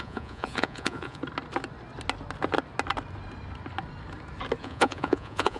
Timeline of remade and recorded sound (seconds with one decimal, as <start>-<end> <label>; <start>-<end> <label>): 0.0-1.2 remade; 1.2-4.6 recorded; 4.6-5.6 remade

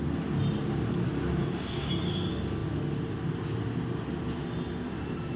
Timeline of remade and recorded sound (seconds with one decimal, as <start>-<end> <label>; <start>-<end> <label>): 0.0-1.4 recorded; 1.4-1.9 remade; 1.9-5.4 recorded

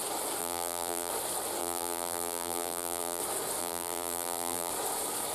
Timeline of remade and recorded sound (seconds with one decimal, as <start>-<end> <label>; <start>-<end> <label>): 0.0-0.4 recorded; 0.4-1.1 remade; 1.1-1.6 recorded; 1.6-3.2 remade; 3.2-3.6 recorded; 3.6-4.7 remade; 4.7-5.3 recorded

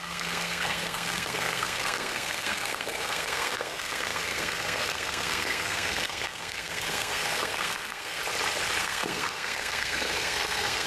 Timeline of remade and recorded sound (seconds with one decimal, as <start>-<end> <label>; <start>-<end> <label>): 0.0-8.2 remade; 8.2-8.8 recorded; 8.8-10.9 remade

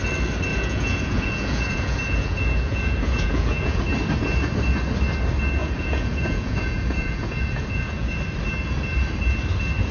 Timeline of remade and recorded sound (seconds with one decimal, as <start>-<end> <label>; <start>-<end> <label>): 0.0-0.5 recorded; 0.5-3.8 remade; 3.8-5.6 recorded; 5.6-8.1 remade; 8.1-9.9 recorded